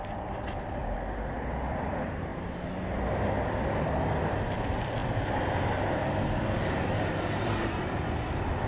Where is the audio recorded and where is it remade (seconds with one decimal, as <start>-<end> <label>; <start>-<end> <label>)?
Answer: 0.0-8.7 recorded